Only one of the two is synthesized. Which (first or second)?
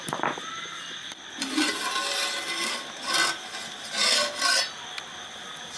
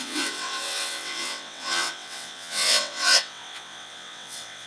second